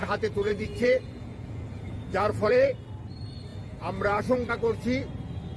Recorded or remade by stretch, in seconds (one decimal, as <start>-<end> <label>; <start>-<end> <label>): 0.0-2.5 remade; 2.5-3.5 recorded; 3.5-4.5 remade; 4.5-5.6 recorded